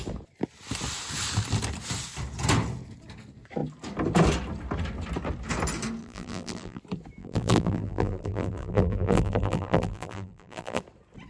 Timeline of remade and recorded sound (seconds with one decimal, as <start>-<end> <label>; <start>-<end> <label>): 0.0-6.0 recorded; 6.0-6.8 remade; 6.8-7.2 recorded; 7.2-10.8 remade; 10.8-11.3 recorded